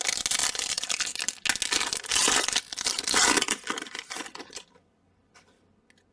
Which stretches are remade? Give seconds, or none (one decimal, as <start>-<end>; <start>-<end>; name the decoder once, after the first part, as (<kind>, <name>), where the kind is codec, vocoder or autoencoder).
0.4-1.0 (vocoder, BigVGAN v2); 2.1-5.6